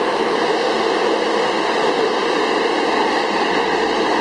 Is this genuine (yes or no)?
yes